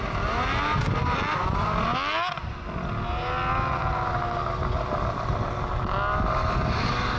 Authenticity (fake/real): real